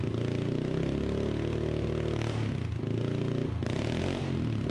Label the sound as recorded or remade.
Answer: recorded